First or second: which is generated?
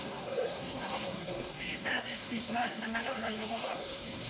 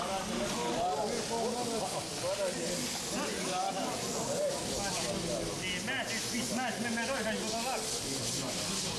first